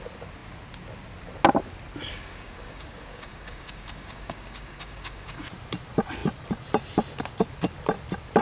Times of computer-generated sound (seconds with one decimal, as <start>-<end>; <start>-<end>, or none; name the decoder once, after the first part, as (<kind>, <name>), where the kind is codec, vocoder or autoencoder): 2.1-5.5 (codec, DAC)